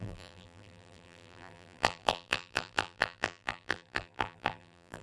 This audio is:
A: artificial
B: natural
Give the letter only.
A